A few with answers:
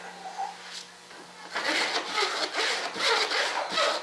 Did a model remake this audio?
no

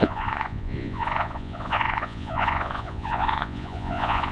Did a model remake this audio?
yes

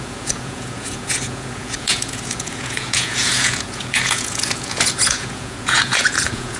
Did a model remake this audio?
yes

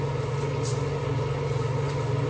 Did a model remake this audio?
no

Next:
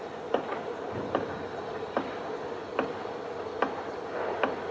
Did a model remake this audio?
no